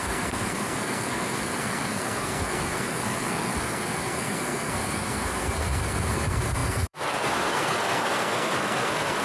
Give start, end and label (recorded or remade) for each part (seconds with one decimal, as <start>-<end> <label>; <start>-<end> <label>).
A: 0.0-9.2 remade